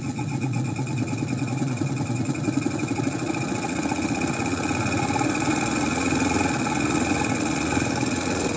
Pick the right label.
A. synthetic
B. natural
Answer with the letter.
A